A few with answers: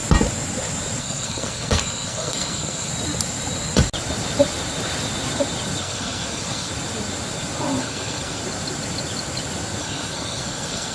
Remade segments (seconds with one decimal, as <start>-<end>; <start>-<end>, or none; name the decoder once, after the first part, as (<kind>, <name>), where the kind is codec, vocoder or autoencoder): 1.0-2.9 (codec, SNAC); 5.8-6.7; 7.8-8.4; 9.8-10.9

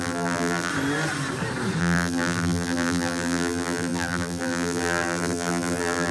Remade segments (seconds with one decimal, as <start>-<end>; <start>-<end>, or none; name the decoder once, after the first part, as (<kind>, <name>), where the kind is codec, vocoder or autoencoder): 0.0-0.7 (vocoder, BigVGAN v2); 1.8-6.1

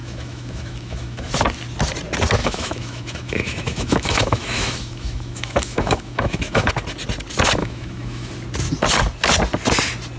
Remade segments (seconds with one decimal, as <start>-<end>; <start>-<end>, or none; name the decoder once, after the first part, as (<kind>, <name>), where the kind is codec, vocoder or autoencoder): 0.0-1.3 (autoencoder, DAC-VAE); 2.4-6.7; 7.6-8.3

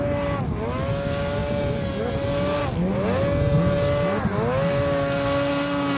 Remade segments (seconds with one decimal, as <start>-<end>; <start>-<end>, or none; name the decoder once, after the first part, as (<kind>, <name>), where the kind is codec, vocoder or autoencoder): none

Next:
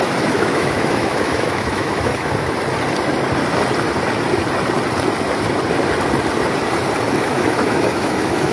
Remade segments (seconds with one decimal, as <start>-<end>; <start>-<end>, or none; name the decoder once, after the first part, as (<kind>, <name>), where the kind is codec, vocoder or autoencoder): 0.0-2.1 (autoencoder, DAC-VAE); 7.2-8.5

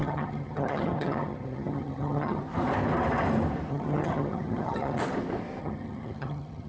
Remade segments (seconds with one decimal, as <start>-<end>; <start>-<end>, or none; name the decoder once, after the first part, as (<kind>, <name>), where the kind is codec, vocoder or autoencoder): 0.0-2.4 (vocoder, HiFi-GAN); 3.7-5.0; 5.6-6.7